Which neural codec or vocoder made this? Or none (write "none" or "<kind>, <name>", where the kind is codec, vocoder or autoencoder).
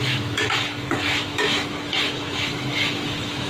autoencoder, DAC-VAE